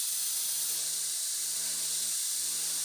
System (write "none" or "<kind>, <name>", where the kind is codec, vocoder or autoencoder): none